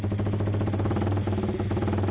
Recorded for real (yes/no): yes